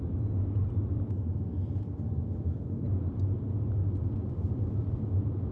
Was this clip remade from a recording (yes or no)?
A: no